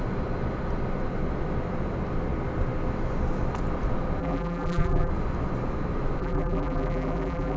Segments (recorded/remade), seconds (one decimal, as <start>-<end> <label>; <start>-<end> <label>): 0.0-4.2 recorded; 4.2-5.1 remade; 5.1-6.2 recorded; 6.2-7.6 remade